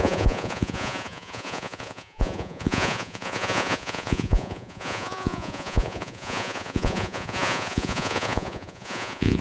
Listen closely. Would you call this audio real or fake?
fake